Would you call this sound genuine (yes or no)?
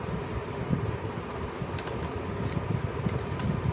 yes